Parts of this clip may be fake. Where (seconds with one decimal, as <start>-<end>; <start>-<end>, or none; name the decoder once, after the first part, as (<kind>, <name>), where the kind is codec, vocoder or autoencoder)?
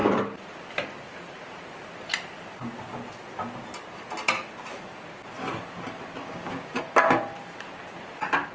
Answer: 6.2-6.8 (codec, DAC)